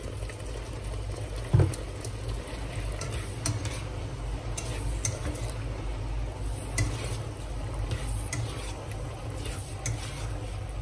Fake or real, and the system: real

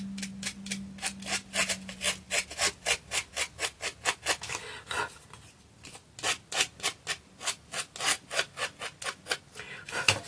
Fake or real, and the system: real